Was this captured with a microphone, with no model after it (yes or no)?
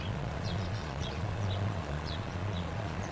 no